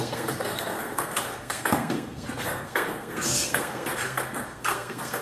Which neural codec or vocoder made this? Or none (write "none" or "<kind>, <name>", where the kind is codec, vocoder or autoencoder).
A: codec, SNAC